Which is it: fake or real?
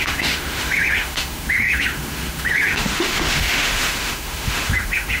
fake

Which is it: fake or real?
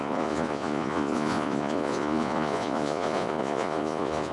fake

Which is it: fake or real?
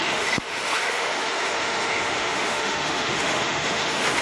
fake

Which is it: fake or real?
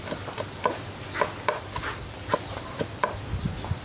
real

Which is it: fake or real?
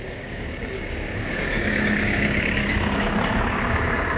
fake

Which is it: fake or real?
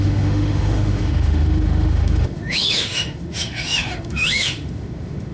fake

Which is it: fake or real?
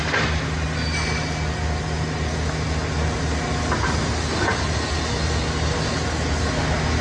real